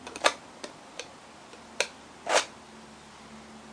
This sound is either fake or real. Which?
real